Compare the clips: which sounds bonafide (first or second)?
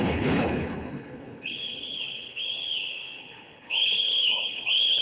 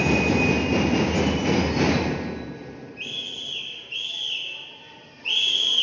second